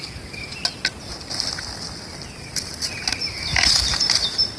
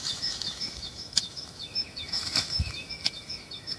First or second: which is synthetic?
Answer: second